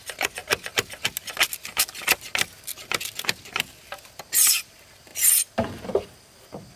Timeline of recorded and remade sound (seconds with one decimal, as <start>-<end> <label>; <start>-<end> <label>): 0.0-6.8 recorded